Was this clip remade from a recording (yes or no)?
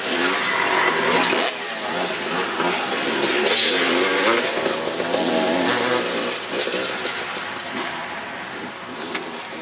no